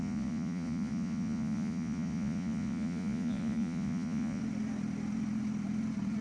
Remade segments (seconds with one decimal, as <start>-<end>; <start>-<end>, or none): 0.0-4.4